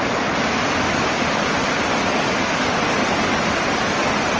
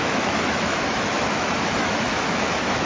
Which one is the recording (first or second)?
first